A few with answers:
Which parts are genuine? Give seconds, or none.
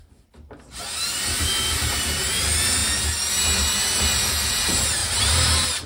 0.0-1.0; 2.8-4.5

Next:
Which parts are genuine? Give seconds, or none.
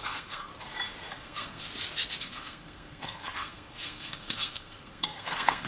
0.5-1.1; 1.7-2.2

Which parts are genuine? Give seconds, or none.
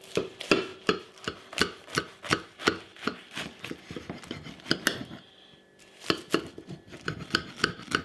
0.0-8.0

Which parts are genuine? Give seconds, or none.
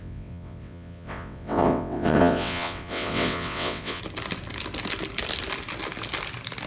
4.0-6.7